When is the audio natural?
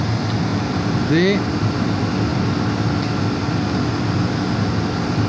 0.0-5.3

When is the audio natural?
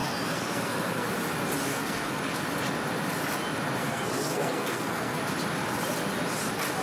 1.1-1.7; 2.2-3.8; 5.2-6.8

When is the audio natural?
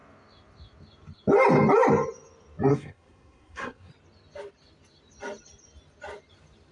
0.0-2.7; 3.9-6.7